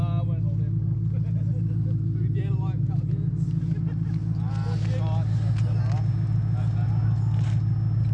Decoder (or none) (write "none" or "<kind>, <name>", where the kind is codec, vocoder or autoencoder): none